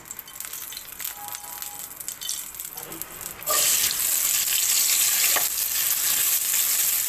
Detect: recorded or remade recorded